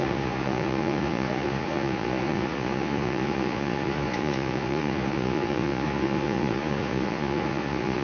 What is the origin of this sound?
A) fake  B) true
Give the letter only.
A